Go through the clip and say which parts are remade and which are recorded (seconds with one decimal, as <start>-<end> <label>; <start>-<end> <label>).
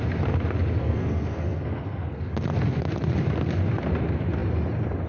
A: 0.0-0.8 recorded; 0.8-2.3 remade; 2.3-5.1 recorded